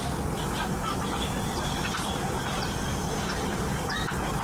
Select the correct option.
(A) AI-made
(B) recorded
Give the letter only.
B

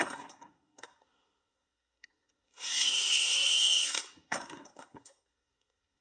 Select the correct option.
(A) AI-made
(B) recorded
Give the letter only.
A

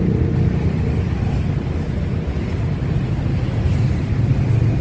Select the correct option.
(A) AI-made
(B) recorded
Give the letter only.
B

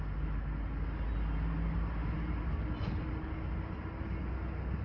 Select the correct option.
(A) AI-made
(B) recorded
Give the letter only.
B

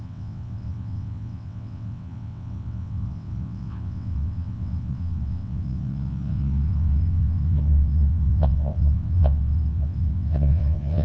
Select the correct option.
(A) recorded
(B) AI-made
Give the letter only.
B